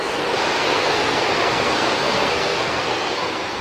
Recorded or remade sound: remade